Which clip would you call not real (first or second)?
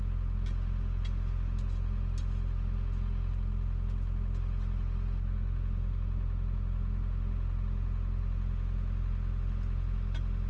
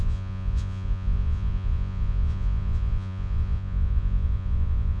second